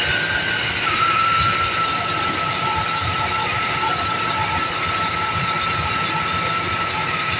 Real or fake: real